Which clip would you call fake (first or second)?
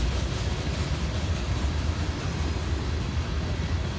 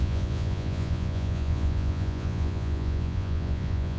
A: second